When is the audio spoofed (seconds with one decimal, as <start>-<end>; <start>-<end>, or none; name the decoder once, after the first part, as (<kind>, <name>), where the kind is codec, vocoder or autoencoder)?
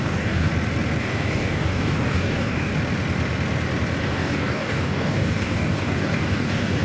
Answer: 0.0-0.5 (codec, DAC); 1.0-2.7; 4.0-6.8